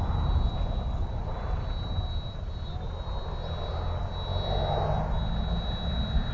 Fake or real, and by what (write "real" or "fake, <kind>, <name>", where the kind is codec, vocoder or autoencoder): real